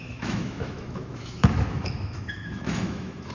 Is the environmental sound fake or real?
fake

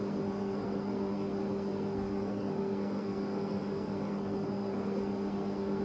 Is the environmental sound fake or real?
fake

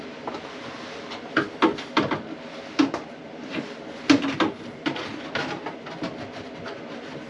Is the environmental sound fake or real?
real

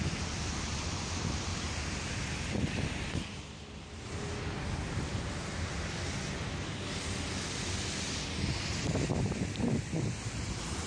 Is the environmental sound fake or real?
real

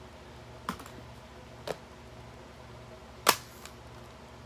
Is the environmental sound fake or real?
real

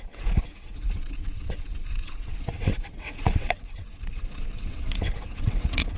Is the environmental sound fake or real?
fake